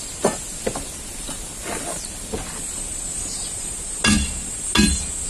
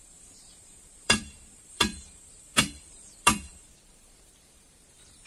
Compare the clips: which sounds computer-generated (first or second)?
second